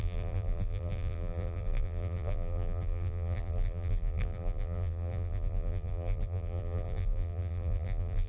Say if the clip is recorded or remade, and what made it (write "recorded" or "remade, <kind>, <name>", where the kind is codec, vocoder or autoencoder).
remade, vocoder, BigVGAN v2